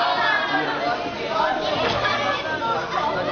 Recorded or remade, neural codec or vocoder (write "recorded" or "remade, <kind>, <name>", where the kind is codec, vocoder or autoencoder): recorded